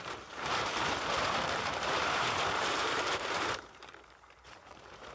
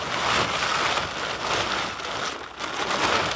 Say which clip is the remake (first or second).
first